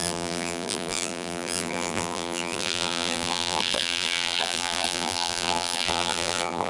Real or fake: fake